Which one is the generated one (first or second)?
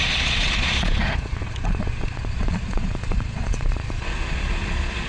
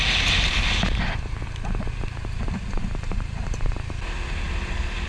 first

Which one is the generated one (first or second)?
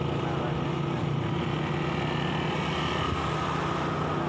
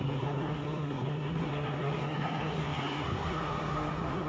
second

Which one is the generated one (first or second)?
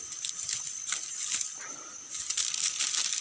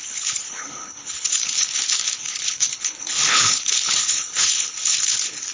second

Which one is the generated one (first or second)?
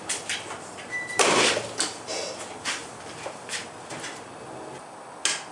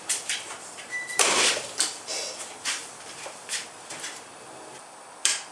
second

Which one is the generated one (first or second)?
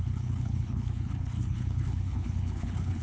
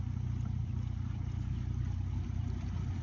first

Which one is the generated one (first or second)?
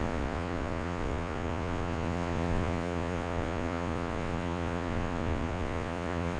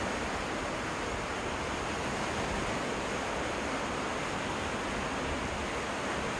first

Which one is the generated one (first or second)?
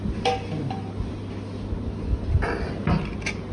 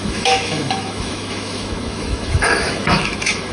second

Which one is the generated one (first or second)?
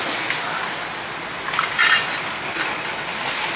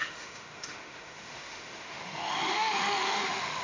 second